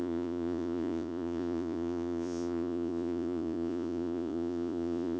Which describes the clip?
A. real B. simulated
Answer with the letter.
B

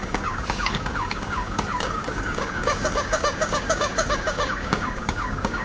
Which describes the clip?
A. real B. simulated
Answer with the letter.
B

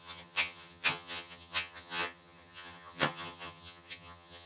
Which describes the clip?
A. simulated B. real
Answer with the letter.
A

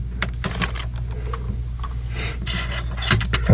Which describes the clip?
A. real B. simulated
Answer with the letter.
A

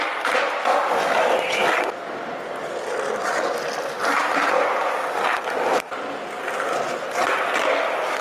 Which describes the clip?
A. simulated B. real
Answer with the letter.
B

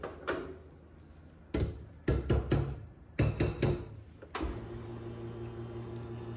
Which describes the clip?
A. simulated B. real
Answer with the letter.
B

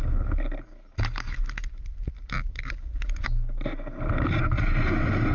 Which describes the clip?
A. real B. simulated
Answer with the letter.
A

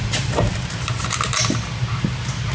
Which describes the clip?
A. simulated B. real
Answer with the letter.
B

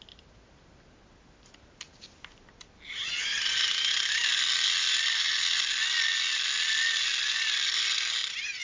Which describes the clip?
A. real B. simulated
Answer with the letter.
A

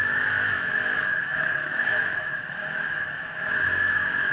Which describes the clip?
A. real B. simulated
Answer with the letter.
B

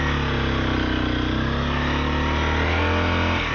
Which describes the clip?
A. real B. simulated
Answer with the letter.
A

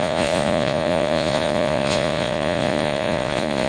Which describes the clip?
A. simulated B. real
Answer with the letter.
A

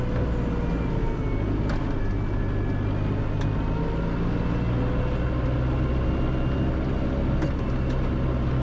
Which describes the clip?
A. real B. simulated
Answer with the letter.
A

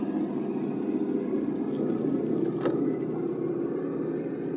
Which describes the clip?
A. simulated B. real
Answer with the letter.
B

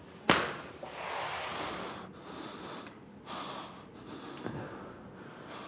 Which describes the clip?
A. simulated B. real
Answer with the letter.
B